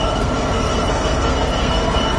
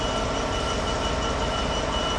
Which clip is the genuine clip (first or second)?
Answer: second